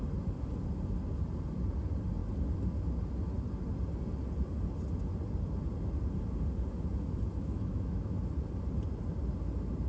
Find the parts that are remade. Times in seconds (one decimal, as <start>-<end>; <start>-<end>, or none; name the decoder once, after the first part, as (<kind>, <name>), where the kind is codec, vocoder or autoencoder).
7.4-8.3 (autoencoder, DAC-VAE)